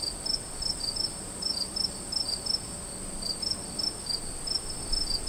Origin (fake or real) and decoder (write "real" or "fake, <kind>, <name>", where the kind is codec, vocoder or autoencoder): real